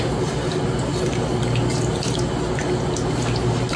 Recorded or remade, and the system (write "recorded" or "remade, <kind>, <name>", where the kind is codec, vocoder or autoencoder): recorded